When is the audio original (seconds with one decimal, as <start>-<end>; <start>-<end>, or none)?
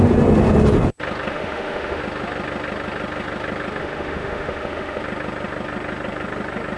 0.0-1.3; 2.0-3.8; 5.0-6.8